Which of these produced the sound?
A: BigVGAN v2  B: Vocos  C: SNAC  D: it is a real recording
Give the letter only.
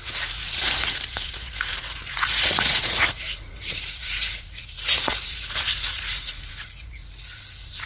B